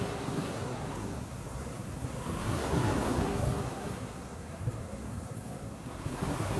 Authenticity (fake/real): fake